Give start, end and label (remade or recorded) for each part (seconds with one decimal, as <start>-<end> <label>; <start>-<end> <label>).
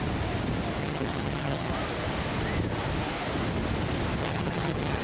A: 0.0-0.8 recorded; 0.8-1.7 remade; 1.7-4.2 recorded; 4.2-5.0 remade